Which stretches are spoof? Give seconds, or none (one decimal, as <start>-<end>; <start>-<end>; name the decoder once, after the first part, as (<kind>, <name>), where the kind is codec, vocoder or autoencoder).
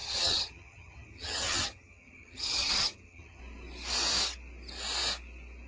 0.0-3.4 (vocoder, HiFi-GAN)